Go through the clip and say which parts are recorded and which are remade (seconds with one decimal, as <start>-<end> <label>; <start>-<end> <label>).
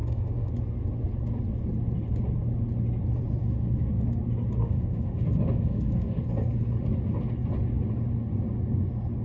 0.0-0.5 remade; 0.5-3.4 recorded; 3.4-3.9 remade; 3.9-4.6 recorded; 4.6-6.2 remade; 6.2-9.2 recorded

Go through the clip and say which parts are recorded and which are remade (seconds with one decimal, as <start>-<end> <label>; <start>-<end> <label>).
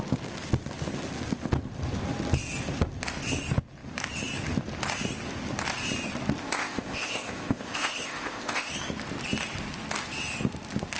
0.0-6.4 recorded; 6.4-8.7 remade; 8.7-11.0 recorded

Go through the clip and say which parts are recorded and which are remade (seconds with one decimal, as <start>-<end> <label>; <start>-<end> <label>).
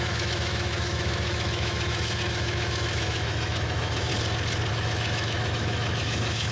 0.0-4.1 remade; 4.1-4.7 recorded; 4.7-6.5 remade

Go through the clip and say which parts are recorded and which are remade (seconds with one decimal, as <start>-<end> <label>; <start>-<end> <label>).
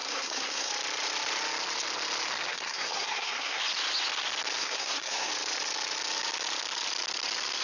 0.0-0.7 remade; 0.7-2.5 recorded; 2.5-3.6 remade; 3.6-4.6 recorded; 4.6-5.3 remade; 5.3-7.6 recorded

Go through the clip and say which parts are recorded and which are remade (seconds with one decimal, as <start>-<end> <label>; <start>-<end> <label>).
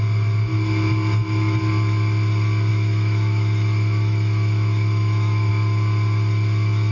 0.0-2.7 recorded; 2.7-5.5 remade; 5.5-6.9 recorded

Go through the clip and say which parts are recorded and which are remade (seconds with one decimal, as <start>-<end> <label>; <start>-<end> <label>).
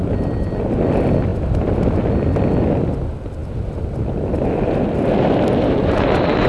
0.0-5.8 recorded; 5.8-6.5 remade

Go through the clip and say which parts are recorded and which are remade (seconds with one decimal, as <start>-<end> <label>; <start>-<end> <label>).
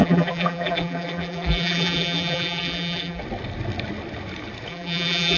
0.0-3.2 remade; 3.2-4.7 recorded; 4.7-5.4 remade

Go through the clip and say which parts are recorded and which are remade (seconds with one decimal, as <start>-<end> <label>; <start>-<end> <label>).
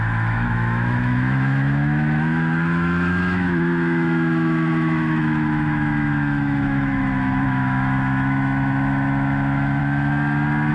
0.0-9.8 remade; 9.8-10.7 recorded